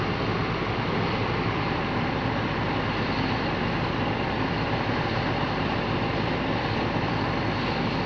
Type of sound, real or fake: real